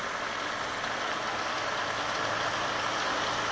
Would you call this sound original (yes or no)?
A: yes